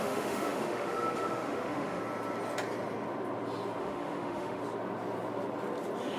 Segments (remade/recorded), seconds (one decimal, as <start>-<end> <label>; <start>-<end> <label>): 0.0-2.0 remade; 2.0-3.8 recorded; 3.8-4.6 remade; 4.6-6.2 recorded